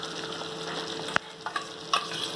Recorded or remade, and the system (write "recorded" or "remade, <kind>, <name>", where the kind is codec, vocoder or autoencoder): recorded